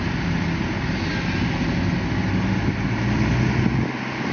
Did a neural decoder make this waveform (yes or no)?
no